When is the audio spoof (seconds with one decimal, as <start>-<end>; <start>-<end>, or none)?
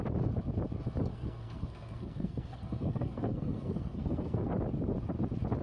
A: 1.1-4.5